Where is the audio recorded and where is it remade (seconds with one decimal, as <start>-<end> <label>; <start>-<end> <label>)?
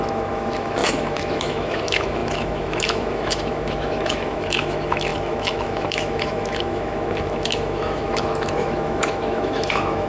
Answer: 0.0-10.1 remade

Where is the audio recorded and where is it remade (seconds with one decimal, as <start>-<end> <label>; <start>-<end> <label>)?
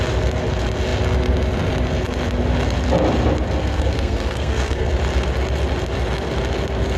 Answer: 0.0-3.6 recorded; 3.6-4.9 remade; 4.9-7.0 recorded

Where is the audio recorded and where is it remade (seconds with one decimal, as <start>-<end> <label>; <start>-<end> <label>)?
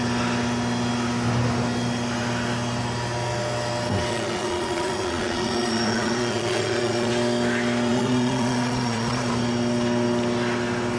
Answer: 0.0-4.1 recorded; 4.1-7.1 remade; 7.1-7.9 recorded; 7.9-9.3 remade; 9.3-11.0 recorded